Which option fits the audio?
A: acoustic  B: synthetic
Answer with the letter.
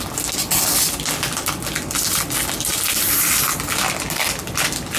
A